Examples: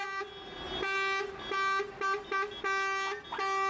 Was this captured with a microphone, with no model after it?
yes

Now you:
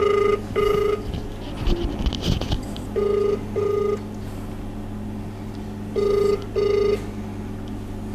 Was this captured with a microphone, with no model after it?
yes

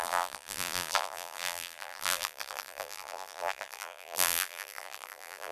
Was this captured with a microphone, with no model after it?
no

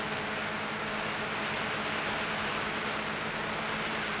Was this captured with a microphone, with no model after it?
yes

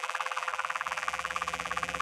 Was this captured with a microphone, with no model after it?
no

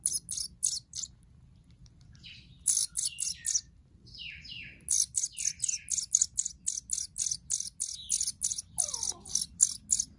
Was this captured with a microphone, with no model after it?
yes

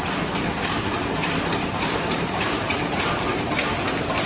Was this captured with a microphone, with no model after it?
no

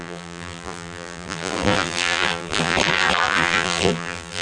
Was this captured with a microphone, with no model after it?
no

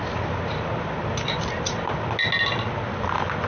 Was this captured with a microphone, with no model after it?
yes